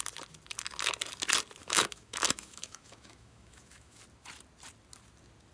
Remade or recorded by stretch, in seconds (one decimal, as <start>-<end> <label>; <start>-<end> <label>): 0.0-1.6 recorded; 1.6-4.0 remade; 4.0-5.5 recorded